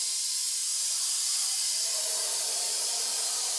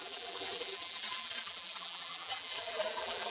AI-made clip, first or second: second